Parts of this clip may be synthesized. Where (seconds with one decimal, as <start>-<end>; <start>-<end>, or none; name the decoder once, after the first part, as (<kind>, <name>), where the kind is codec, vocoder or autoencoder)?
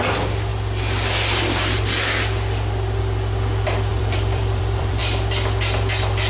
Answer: 3.9-5.0 (vocoder, BigVGAN v2)